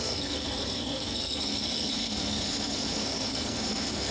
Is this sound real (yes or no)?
no